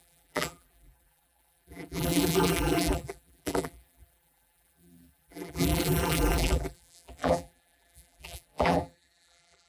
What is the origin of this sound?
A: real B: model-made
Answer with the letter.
B